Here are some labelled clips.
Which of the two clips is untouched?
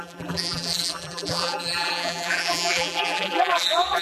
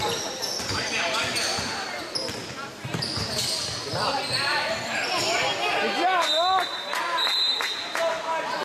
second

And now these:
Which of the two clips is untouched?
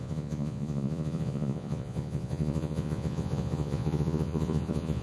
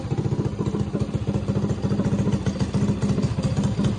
second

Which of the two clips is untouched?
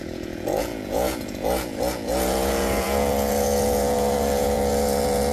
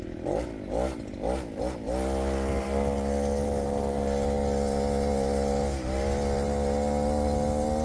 second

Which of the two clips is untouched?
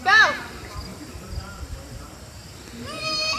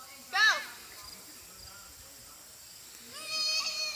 second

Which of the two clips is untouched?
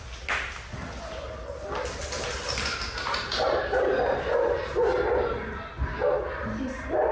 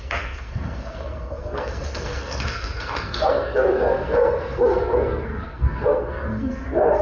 first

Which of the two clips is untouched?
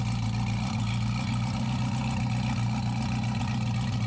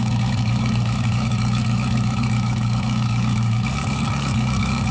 first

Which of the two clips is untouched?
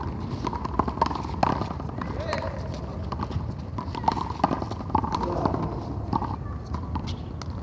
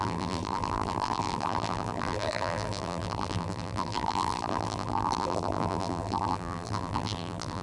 first